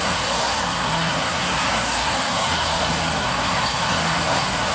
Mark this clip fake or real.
fake